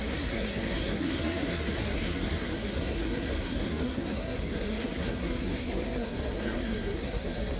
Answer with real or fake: fake